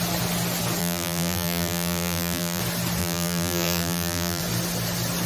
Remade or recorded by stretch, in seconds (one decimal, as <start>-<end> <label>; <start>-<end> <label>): 0.0-0.8 recorded; 0.8-2.6 remade; 2.6-3.0 recorded; 3.0-4.4 remade; 4.4-5.3 recorded